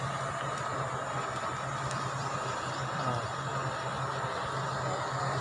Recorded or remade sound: recorded